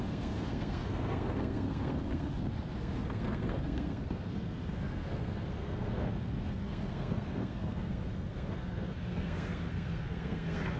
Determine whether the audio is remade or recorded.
remade